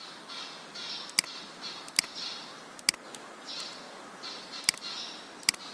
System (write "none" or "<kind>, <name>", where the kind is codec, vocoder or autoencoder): none